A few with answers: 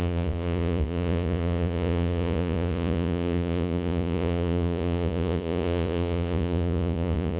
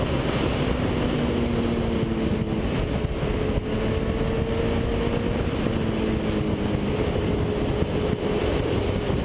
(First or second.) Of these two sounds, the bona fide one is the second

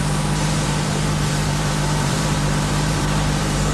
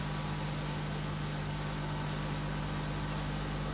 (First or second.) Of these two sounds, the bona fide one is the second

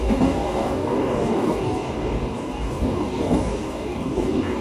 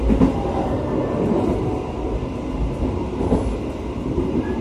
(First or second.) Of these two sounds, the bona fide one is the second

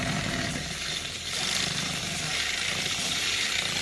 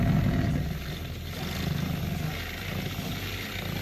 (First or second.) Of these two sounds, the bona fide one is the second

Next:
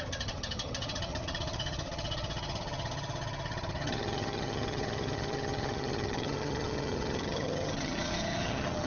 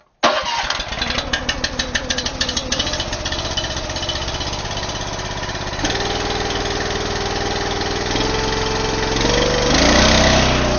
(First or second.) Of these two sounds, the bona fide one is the second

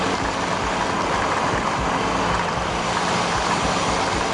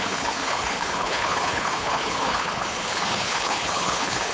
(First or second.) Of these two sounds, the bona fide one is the first